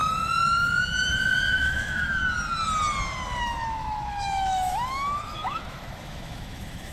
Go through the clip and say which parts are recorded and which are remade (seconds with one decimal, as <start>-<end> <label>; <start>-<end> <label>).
0.0-1.5 recorded; 1.5-2.2 remade; 2.2-3.4 recorded; 3.4-6.9 remade

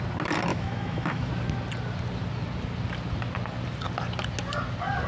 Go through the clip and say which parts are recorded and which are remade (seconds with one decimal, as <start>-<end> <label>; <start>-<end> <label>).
0.0-0.5 recorded; 0.5-1.3 remade; 1.3-5.1 recorded

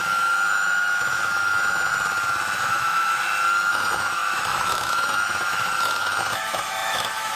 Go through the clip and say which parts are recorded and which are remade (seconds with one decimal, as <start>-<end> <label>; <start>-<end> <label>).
0.0-1.9 remade; 1.9-2.6 recorded; 2.6-3.1 remade; 3.1-3.7 recorded; 3.7-7.4 remade

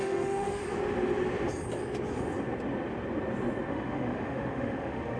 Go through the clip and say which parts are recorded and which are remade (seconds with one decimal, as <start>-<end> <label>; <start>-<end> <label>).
0.0-0.6 remade; 0.6-3.7 recorded; 3.7-5.2 remade

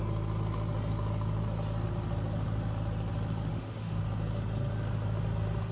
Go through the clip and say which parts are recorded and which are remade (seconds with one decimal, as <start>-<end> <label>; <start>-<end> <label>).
0.0-3.5 recorded; 3.5-4.0 remade; 4.0-5.7 recorded